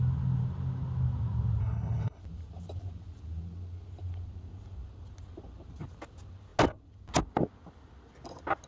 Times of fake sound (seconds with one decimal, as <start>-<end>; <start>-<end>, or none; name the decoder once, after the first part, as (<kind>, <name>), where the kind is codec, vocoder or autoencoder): 1.6-2.2 (codec, HILCodec)